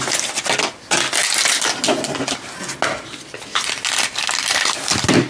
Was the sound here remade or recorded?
recorded